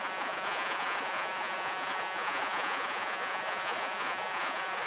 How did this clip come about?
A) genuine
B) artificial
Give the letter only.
B